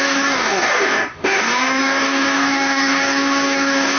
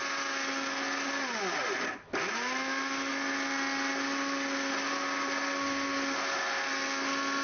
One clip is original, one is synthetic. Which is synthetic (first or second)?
first